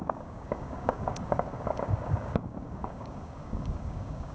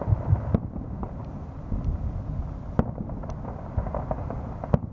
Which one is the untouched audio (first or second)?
second